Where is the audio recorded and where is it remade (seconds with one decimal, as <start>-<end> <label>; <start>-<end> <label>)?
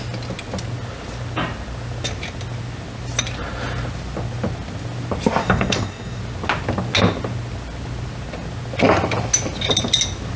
0.0-5.4 recorded; 5.4-6.2 remade; 6.2-10.4 recorded